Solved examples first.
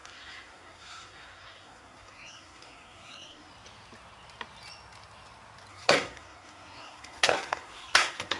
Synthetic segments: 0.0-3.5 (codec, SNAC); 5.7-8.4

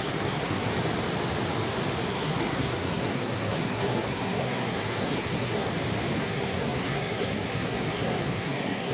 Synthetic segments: 0.0-0.7 (codec, SNAC); 2.1-5.7; 6.2-8.9